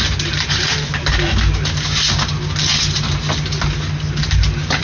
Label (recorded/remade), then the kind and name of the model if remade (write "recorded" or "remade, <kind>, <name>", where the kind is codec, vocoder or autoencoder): recorded